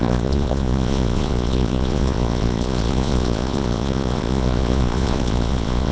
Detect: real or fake fake